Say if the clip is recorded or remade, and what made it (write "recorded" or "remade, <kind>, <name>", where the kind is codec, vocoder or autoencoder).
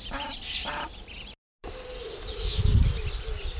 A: recorded